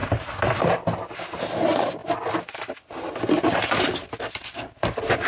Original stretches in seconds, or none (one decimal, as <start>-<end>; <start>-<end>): 1.4-5.3